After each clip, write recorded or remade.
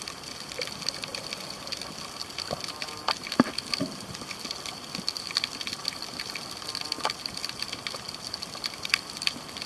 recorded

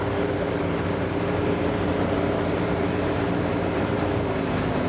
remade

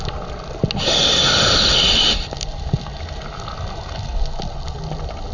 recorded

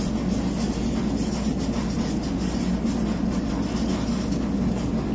recorded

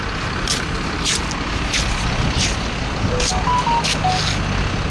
recorded